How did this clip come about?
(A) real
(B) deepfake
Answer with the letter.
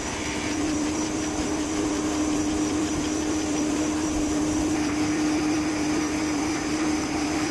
B